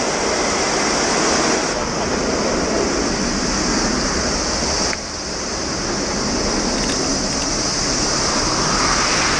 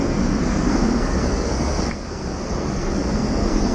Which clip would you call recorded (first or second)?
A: first